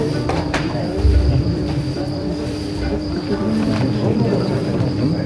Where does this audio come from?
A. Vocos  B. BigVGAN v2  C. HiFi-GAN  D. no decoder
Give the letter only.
B